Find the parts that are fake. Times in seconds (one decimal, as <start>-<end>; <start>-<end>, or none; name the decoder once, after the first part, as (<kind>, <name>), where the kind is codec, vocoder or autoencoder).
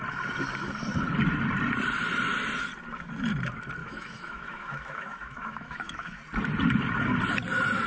3.8-6.2 (autoencoder, DAC-VAE)